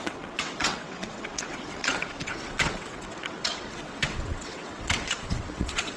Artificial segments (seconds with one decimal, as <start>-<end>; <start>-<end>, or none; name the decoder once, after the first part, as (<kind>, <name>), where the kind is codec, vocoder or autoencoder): 0.0-6.0 (vocoder, WaveNeXt)